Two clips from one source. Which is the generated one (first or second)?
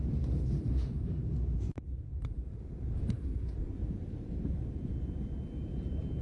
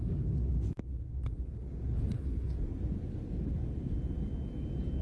first